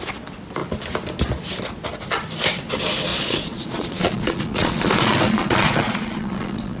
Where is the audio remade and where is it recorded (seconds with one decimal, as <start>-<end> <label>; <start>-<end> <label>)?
0.0-3.1 recorded; 3.1-6.8 remade